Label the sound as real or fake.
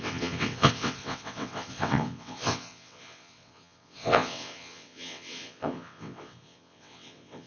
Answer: fake